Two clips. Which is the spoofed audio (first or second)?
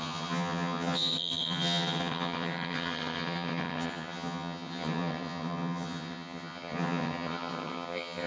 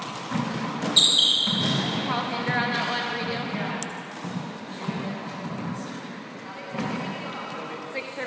first